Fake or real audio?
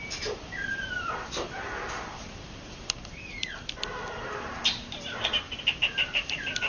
real